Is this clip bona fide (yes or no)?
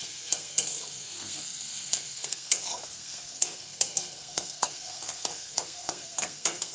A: no